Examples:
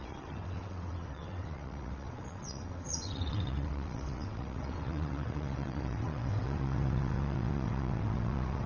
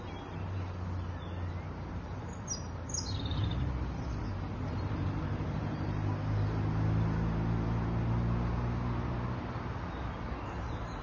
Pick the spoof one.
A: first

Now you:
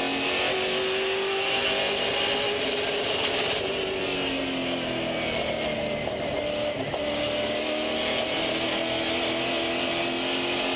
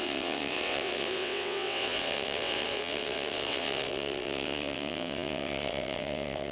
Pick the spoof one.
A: second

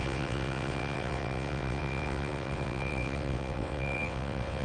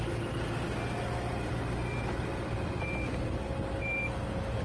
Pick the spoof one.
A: first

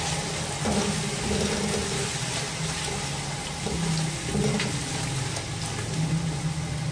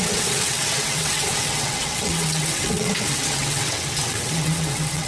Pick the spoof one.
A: second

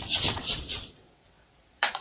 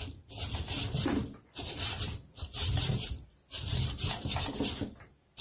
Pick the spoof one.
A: first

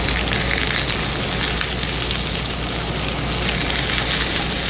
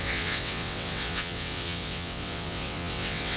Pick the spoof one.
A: second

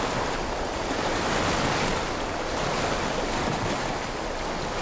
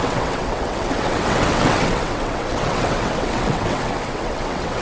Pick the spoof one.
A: second